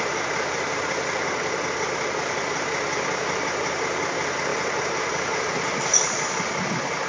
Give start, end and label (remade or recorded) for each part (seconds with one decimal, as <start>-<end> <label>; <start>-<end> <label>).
0.0-4.5 recorded; 4.5-5.5 remade; 5.5-7.1 recorded